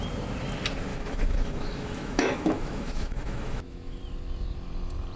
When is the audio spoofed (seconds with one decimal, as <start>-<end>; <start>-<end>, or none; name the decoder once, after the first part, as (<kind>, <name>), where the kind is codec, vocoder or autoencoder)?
0.9-4.0 (autoencoder, DAC-VAE)